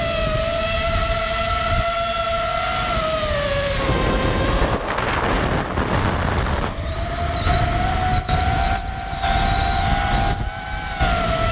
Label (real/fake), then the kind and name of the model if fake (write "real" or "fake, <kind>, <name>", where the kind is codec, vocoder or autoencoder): real